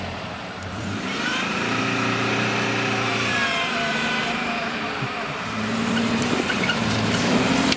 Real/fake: fake